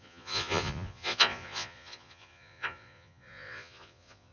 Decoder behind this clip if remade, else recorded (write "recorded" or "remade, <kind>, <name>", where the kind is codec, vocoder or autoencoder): remade, vocoder, Vocos